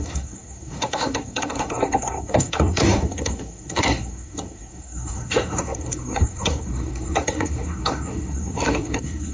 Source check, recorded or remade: remade